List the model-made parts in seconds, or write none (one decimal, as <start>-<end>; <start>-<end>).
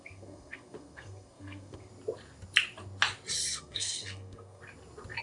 0.0-1.9; 3.6-4.6